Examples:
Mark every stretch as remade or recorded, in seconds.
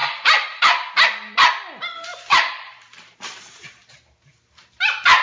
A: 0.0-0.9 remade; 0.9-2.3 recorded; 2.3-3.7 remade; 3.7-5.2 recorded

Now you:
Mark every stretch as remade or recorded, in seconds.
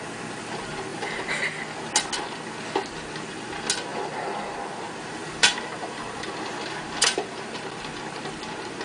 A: 0.0-0.9 recorded; 0.9-1.6 remade; 1.6-5.2 recorded; 5.2-7.6 remade; 7.6-8.8 recorded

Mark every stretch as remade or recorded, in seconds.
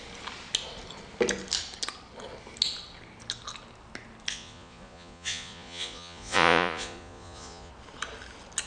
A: 0.0-4.3 recorded; 4.3-7.7 remade; 7.7-8.7 recorded